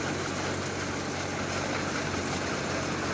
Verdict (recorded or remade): recorded